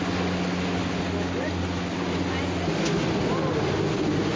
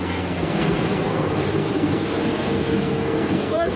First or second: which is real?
first